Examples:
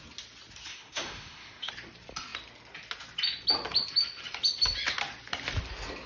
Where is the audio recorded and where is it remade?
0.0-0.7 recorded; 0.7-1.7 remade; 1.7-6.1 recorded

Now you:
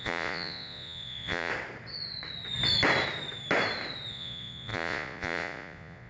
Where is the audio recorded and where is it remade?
0.0-1.5 remade; 1.5-4.1 recorded; 4.1-6.1 remade

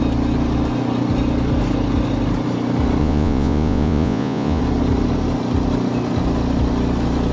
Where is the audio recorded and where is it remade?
0.0-3.0 recorded; 3.0-4.6 remade; 4.6-7.3 recorded

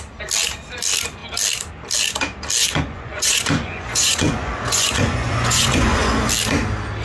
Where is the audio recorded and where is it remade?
0.0-2.6 recorded; 2.6-6.3 remade; 6.3-7.0 recorded

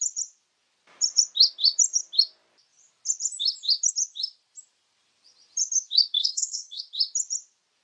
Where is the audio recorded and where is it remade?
0.0-6.2 recorded; 6.2-6.8 remade; 6.8-7.8 recorded

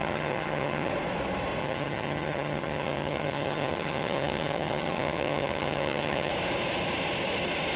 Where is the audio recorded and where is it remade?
0.0-0.9 remade; 0.9-1.6 recorded; 1.6-6.3 remade; 6.3-7.8 recorded